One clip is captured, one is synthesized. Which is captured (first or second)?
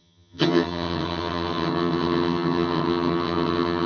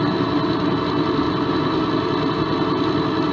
second